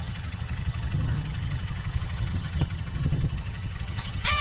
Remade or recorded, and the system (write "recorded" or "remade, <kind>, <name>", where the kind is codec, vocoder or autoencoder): remade, vocoder, HiFi-GAN